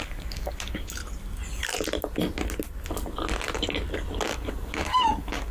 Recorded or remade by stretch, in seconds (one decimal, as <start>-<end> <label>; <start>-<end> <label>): 0.0-1.0 remade; 1.0-4.3 recorded; 4.3-5.5 remade